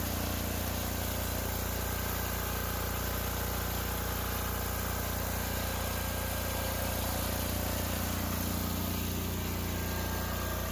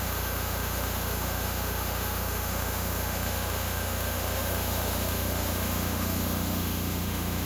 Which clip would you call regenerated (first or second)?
second